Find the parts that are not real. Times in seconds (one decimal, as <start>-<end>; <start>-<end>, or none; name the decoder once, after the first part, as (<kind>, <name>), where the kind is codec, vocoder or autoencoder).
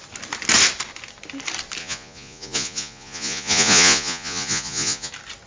1.8-5.1 (vocoder, Vocos)